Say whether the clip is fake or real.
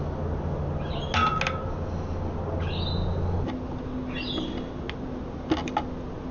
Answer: real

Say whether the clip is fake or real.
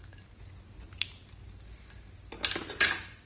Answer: real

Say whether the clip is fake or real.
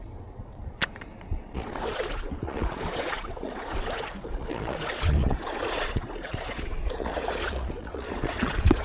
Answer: fake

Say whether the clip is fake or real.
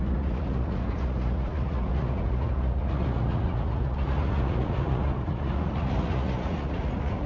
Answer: fake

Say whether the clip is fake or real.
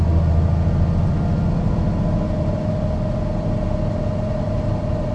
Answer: real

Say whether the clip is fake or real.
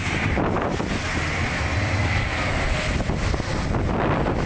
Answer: real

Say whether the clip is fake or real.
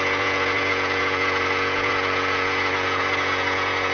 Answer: fake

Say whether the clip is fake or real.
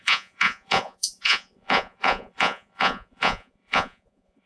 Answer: fake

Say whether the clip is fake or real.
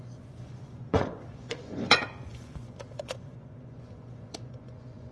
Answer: fake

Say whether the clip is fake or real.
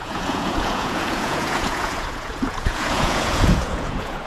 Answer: fake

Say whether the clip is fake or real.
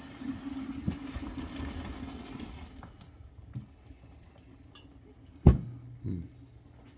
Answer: real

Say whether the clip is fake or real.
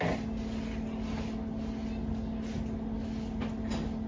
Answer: real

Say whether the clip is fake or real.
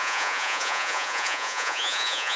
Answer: fake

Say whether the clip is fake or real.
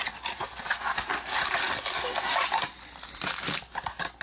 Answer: real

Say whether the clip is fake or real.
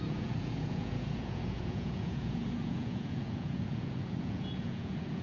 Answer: fake